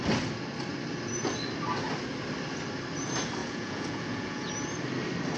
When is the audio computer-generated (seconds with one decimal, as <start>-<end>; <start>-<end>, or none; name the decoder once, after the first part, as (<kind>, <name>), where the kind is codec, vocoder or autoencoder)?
3.4-4.5 (vocoder, Vocos)